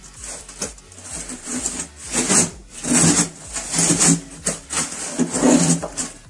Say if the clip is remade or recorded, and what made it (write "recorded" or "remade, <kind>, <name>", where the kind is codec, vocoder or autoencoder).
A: recorded